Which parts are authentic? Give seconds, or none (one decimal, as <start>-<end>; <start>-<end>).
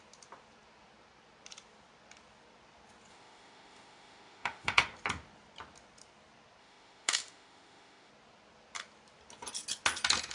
0.0-3.1; 4.8-6.6; 8.1-10.3